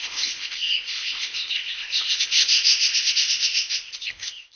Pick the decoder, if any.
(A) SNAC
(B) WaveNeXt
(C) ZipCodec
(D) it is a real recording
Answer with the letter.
C